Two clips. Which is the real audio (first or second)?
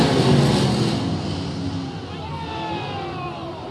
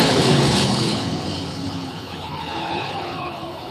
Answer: first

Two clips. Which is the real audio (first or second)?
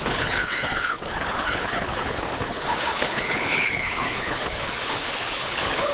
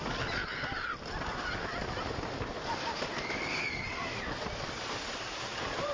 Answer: second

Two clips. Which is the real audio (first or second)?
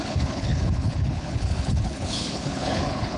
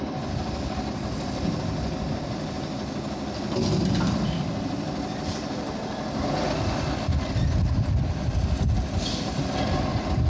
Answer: second